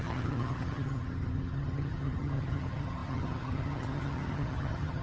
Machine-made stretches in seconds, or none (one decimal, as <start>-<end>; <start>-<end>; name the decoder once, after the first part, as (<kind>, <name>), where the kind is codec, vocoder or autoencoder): 0.0-5.0 (vocoder, HiFi-GAN)